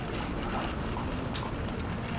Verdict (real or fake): real